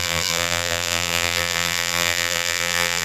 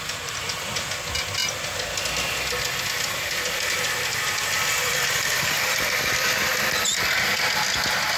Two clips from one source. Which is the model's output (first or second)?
first